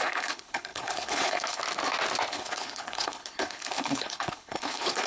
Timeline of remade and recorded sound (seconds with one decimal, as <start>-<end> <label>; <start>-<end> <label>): 0.0-1.6 remade; 1.6-2.3 recorded; 2.3-5.1 remade